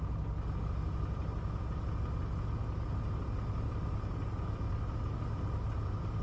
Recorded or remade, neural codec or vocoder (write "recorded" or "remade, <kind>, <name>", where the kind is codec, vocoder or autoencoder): recorded